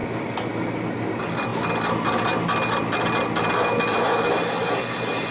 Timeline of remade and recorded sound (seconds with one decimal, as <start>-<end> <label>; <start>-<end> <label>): 0.0-5.3 recorded